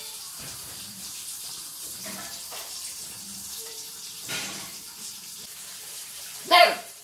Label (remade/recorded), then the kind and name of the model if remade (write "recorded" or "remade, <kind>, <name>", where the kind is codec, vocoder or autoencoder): remade, vocoder, BigVGAN v2